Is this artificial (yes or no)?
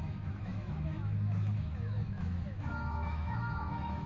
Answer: yes